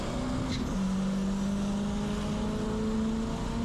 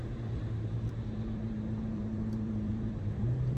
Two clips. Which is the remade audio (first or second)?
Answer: second